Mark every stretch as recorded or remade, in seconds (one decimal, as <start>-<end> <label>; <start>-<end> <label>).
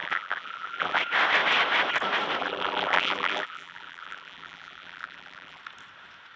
0.0-1.0 remade; 1.0-2.4 recorded; 2.4-5.6 remade; 5.6-6.4 recorded